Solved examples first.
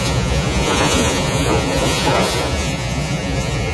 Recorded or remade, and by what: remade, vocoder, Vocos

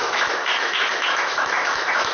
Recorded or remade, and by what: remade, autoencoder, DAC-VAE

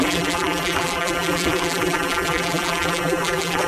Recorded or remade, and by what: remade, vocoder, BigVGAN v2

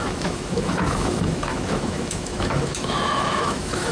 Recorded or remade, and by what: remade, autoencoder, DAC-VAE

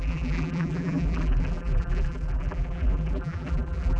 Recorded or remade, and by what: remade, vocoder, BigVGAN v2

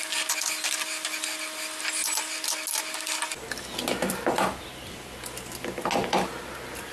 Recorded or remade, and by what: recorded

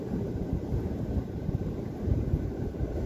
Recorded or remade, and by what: remade, vocoder, BigVGAN v2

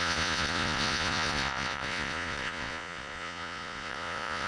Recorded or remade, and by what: remade, vocoder, Vocos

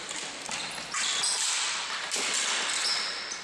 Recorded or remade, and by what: recorded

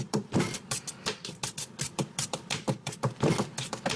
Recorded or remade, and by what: remade, vocoder, BigVGAN v2